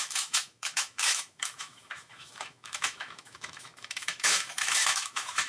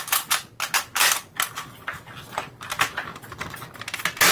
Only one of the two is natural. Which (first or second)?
second